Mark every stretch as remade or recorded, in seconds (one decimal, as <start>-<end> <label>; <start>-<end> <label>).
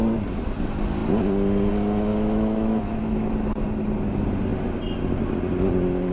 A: 0.0-2.1 recorded; 2.1-3.3 remade; 3.3-6.1 recorded